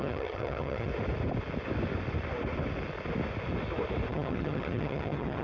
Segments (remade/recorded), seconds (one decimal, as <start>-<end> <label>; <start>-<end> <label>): 0.0-0.9 remade; 0.9-4.1 recorded; 4.1-5.4 remade

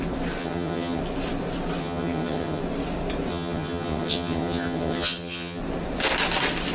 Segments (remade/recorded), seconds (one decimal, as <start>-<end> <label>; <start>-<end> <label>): 0.0-0.4 recorded; 0.4-1.0 remade; 1.0-1.8 recorded; 1.8-2.6 remade; 2.6-3.3 recorded; 3.3-5.6 remade; 5.6-6.7 recorded